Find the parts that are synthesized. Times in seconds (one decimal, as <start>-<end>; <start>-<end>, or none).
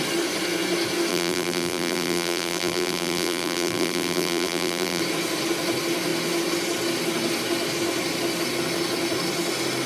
1.1-5.0